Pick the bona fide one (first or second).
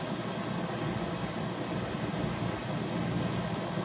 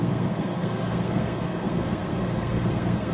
first